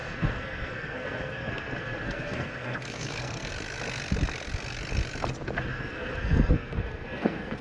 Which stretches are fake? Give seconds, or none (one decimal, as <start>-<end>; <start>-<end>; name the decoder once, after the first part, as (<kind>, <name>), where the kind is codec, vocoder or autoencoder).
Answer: 0.0-3.5 (codec, SNAC); 5.7-7.6